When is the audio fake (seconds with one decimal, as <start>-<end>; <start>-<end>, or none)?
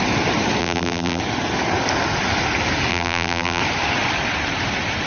0.6-1.2; 2.9-3.6